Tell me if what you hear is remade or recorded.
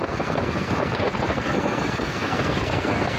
remade